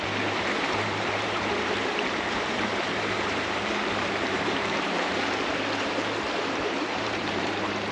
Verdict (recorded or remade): remade